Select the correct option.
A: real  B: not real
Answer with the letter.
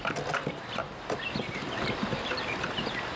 A